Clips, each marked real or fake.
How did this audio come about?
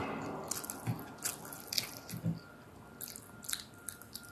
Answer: real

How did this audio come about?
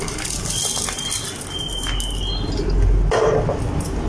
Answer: real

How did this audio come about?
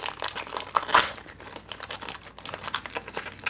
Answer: real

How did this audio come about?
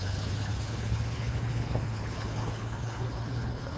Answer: fake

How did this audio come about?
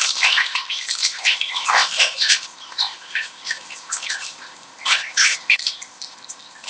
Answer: fake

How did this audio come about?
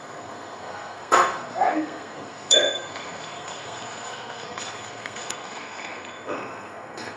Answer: fake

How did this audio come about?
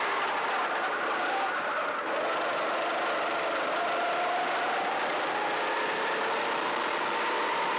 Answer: real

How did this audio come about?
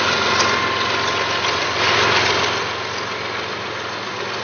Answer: real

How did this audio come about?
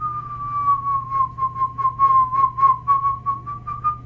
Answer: real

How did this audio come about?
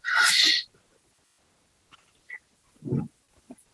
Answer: real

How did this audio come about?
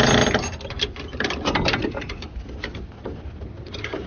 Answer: real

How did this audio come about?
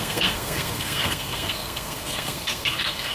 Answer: fake